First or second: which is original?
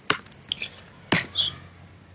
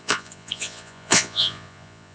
first